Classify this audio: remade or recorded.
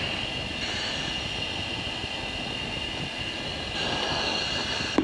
recorded